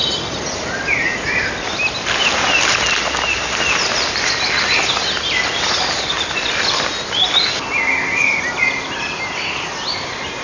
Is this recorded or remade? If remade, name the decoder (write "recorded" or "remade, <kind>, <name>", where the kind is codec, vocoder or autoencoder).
recorded